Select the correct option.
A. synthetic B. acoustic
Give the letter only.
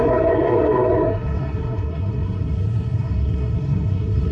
A